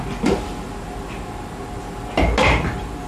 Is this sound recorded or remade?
recorded